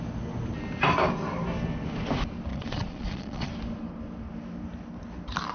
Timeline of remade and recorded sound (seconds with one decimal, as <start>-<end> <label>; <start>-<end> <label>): 0.0-2.5 recorded; 2.5-3.5 remade; 3.5-5.5 recorded